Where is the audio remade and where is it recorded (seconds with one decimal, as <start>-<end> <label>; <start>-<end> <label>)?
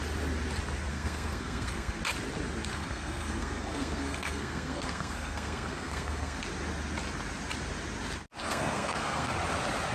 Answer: 0.0-0.9 recorded; 0.9-2.0 remade; 2.0-2.7 recorded; 2.7-6.4 remade; 6.4-8.4 recorded; 8.4-9.3 remade; 9.3-9.9 recorded